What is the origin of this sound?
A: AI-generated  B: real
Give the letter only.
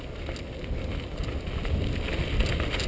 B